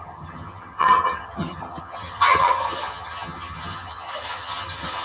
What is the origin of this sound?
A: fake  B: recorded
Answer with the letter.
A